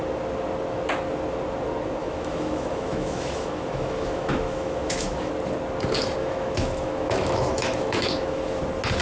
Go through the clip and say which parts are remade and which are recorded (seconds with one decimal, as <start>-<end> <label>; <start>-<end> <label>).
0.0-2.0 recorded; 2.0-5.3 remade; 5.3-6.2 recorded; 6.2-8.6 remade; 8.6-9.0 recorded